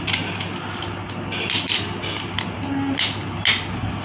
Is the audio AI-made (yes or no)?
no